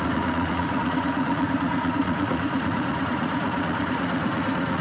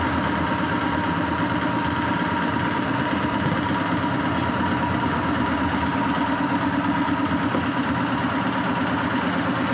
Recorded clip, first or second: second